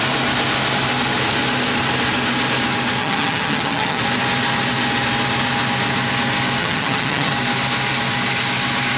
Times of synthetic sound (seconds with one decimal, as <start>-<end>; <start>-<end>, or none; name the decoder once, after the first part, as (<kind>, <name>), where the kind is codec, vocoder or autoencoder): 3.0-4.0 (vocoder, HiFi-GAN); 6.6-7.3